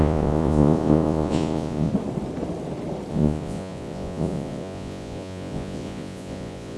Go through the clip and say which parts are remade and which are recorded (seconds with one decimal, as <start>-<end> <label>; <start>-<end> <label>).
0.0-1.9 remade; 1.9-3.1 recorded; 3.1-6.8 remade